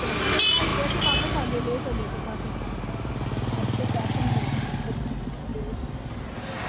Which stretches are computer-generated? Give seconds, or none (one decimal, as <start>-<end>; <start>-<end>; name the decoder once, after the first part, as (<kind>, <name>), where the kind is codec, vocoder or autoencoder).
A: none